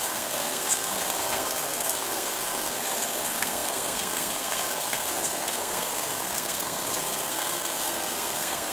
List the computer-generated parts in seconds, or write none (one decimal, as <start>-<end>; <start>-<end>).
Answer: 0.0-8.7